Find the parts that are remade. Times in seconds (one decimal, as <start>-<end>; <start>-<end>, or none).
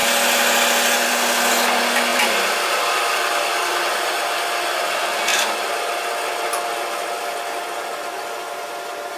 2.1-2.8; 5.3-5.9